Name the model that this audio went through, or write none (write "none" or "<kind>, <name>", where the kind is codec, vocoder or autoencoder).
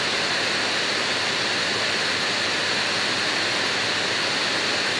none